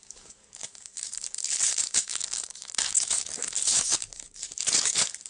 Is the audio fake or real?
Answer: fake